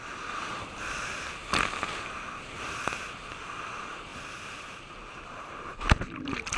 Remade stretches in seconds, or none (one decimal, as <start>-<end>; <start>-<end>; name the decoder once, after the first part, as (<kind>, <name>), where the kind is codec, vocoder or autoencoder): none